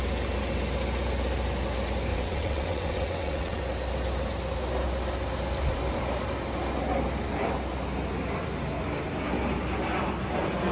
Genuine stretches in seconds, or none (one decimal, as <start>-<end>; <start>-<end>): 0.0-2.1; 3.6-10.7